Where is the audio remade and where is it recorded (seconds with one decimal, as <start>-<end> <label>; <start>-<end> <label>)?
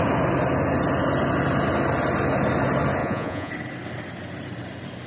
0.0-3.0 recorded; 3.0-3.5 remade; 3.5-5.1 recorded